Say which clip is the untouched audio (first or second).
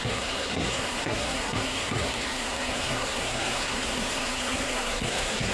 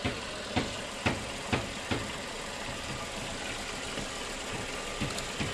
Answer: second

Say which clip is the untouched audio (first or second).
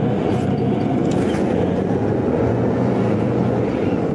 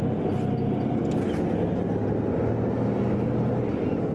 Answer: second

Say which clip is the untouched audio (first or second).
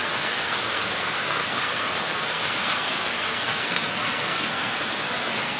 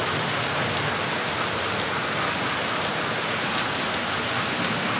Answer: second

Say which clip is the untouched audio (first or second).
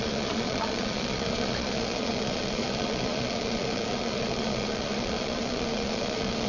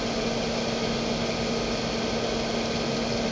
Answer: second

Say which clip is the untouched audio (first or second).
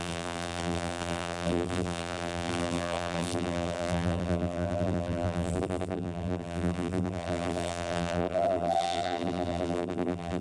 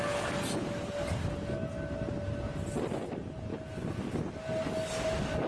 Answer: second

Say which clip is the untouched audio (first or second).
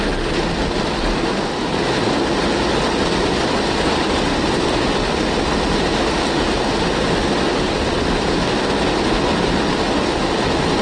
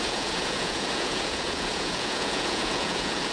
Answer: first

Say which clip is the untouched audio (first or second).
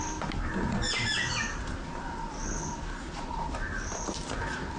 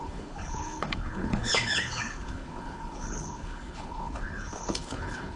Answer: first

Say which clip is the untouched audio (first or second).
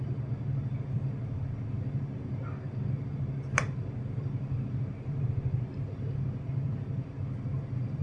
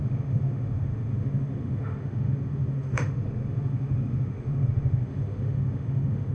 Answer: first